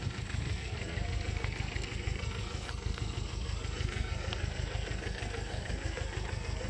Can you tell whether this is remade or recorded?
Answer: remade